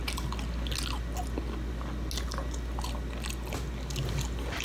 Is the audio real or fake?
real